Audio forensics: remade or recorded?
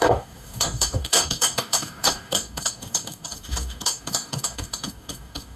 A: remade